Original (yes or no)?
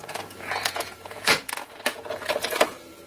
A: no